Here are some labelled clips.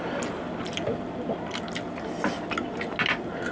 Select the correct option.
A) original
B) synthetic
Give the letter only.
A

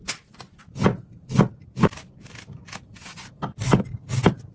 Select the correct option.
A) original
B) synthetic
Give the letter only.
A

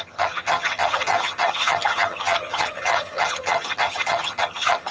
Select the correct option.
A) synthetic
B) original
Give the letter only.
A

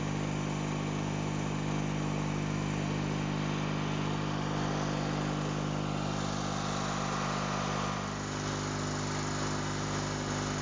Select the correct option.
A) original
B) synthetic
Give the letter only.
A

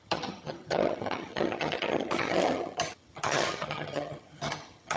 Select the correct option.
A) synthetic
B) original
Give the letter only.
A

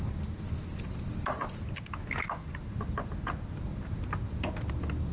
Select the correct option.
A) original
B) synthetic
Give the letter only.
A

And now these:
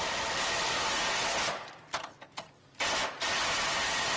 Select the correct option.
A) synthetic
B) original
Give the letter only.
B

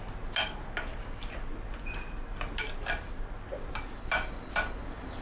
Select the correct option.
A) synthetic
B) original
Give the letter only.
B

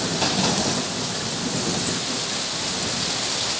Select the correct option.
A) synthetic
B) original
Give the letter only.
B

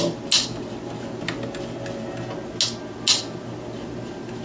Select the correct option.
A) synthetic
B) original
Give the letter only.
B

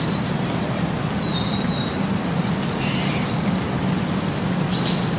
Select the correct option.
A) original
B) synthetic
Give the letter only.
A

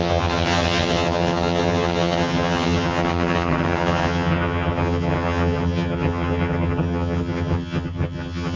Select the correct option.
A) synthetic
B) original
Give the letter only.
A